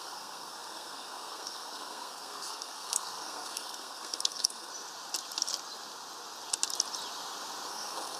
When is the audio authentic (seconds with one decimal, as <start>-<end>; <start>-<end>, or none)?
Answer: 4.7-7.7